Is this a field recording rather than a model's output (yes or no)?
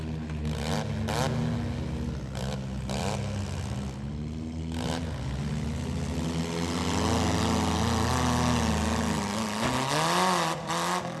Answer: yes